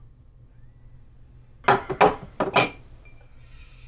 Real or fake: real